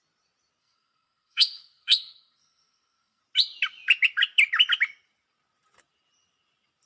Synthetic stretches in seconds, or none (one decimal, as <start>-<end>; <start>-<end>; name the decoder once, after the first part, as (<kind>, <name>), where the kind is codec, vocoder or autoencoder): 0.6-3.2 (codec, SNAC)